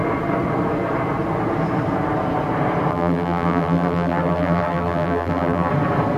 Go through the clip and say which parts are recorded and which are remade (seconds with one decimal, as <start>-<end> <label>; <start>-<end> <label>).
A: 0.0-2.9 recorded; 2.9-5.7 remade; 5.7-6.2 recorded